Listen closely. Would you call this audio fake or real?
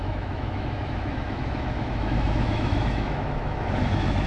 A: fake